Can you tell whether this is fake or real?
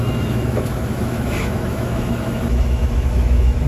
fake